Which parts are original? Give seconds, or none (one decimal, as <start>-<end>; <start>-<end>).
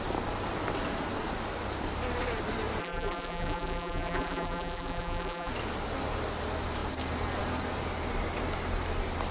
0.0-2.8; 5.5-9.3